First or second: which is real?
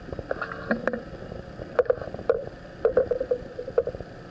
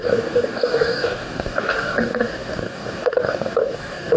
first